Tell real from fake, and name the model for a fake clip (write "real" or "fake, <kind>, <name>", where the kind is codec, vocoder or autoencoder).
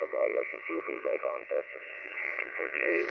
fake, vocoder, Vocos